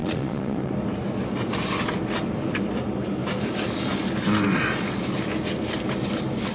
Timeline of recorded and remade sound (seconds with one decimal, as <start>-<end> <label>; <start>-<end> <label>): 0.0-0.7 remade; 0.7-6.5 recorded

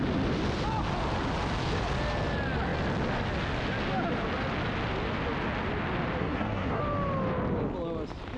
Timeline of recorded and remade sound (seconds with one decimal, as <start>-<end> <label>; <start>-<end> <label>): 0.0-6.2 recorded; 6.2-6.8 remade; 6.8-8.4 recorded

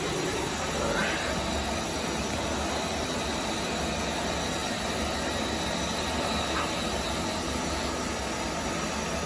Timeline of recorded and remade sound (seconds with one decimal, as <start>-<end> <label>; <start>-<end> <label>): 0.0-9.3 recorded

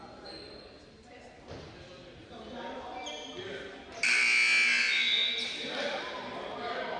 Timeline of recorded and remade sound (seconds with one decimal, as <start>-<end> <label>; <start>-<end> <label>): 0.0-7.0 recorded